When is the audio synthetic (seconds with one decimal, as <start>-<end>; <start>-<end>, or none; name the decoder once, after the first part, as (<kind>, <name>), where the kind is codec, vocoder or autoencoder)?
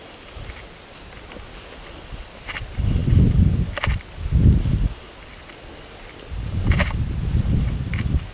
none